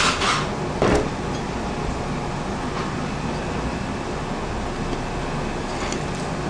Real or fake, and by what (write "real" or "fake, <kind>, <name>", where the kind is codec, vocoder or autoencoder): real